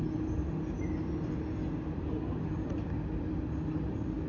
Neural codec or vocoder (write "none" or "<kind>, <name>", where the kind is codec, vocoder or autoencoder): none